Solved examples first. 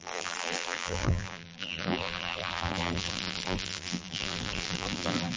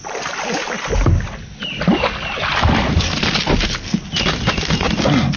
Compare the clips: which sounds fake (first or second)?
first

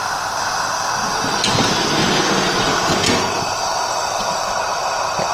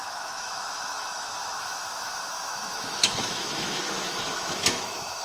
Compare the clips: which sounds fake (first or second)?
second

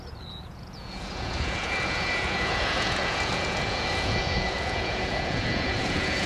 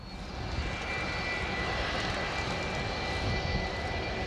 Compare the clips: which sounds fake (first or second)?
first